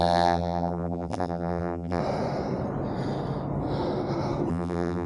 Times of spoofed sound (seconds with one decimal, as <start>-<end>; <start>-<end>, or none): 0.0-2.0; 4.5-5.1